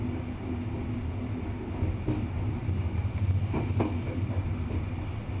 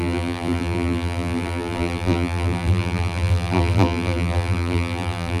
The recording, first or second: first